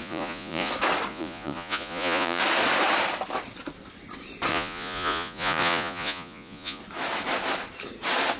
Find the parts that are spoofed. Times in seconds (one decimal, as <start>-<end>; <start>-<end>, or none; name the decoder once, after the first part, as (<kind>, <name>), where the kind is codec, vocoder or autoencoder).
0.0-0.7 (vocoder, Vocos); 1.1-2.4; 4.5-6.8